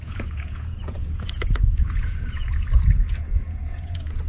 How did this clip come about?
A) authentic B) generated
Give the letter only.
B